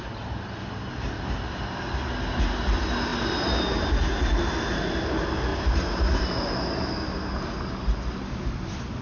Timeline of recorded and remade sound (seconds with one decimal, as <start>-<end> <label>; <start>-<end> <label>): 0.0-9.0 recorded